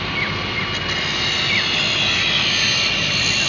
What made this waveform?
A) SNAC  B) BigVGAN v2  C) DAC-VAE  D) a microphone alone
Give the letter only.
D